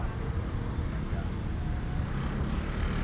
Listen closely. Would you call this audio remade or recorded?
recorded